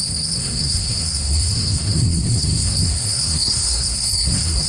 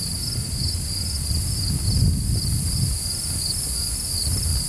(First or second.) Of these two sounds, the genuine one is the second